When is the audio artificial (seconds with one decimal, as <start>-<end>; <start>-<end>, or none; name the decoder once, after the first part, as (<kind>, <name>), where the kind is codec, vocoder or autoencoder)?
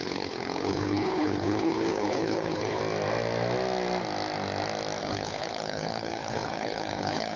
0.0-2.8 (codec, HILCodec); 5.0-7.4